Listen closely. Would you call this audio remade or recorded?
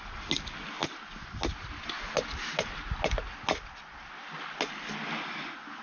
recorded